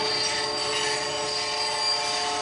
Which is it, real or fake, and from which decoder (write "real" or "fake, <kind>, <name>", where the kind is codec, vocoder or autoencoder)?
real